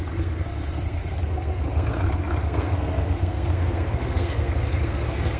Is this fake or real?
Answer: fake